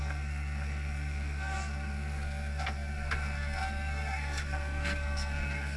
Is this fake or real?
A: fake